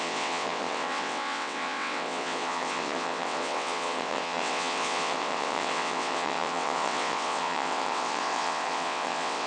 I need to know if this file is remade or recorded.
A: remade